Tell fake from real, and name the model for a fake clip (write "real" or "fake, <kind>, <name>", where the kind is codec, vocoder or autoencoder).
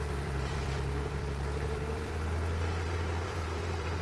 fake, vocoder, BigVGAN v2